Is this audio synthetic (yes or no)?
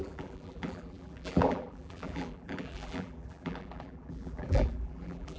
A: yes